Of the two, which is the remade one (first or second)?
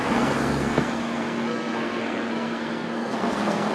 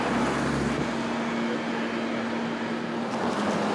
first